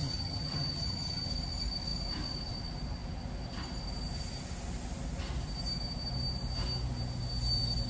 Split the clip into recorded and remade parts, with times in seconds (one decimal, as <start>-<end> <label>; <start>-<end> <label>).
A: 0.0-1.3 remade; 1.3-7.9 recorded